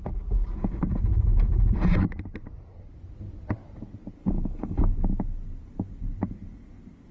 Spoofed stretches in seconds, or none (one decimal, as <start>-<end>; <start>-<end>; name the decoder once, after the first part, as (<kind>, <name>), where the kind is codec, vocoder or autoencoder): 4.2-4.9 (codec, SNAC)